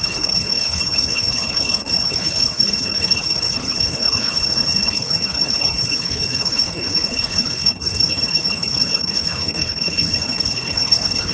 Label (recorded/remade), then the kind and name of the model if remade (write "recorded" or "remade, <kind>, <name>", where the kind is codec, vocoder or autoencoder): remade, codec, HILCodec